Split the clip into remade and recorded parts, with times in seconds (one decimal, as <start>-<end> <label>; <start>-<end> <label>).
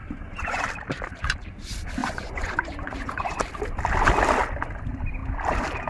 0.0-0.6 remade; 0.6-2.0 recorded; 2.0-3.4 remade; 3.4-5.9 recorded